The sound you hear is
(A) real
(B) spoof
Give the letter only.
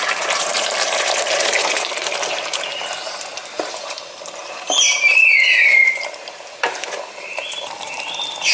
B